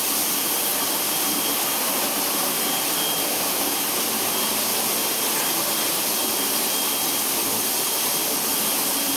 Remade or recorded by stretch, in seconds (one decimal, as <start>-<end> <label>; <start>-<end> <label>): 0.0-0.7 recorded; 0.7-2.7 remade; 2.7-9.2 recorded